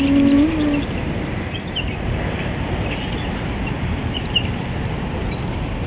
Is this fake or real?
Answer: real